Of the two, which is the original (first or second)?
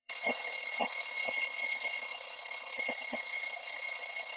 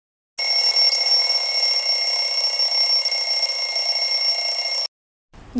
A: second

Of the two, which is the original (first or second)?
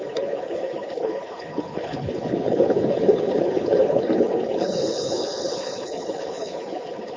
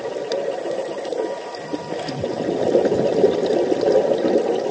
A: second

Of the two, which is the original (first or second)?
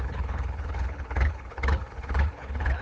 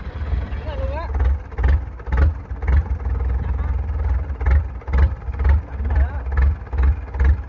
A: second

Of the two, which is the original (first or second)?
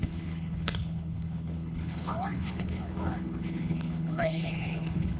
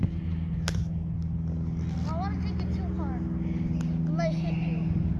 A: second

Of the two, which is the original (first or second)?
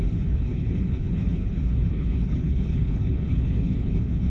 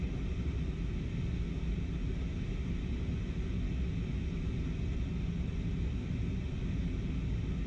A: second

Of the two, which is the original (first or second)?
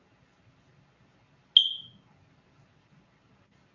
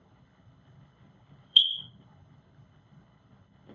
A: first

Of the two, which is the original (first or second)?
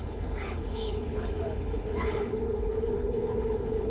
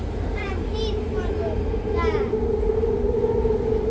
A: second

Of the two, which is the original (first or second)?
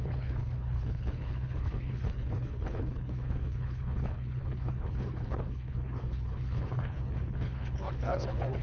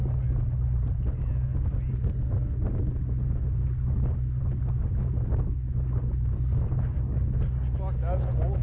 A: second